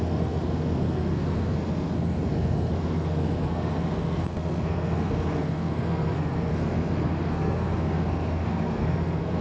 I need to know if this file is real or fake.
fake